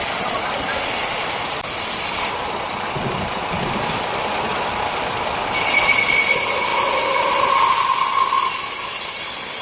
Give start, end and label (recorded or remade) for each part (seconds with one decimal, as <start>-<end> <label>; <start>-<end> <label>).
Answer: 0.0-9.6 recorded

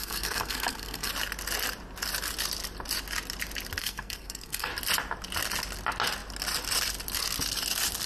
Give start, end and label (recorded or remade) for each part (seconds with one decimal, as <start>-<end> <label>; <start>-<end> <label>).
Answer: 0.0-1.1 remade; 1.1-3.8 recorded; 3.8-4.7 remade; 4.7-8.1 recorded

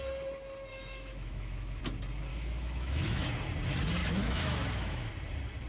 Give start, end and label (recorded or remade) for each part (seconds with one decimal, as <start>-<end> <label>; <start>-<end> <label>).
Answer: 0.0-0.7 recorded; 0.7-1.8 remade; 1.8-2.3 recorded; 2.3-3.3 remade; 3.3-4.0 recorded; 4.0-5.1 remade; 5.1-5.7 recorded

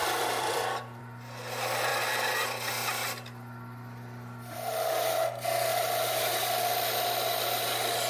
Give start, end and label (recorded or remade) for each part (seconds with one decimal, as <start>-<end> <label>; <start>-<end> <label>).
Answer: 0.0-1.0 remade; 1.0-1.9 recorded; 1.9-4.9 remade; 4.9-8.1 recorded

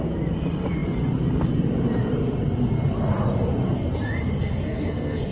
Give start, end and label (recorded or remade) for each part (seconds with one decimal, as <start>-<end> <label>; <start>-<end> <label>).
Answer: 0.0-4.4 recorded; 4.4-5.3 remade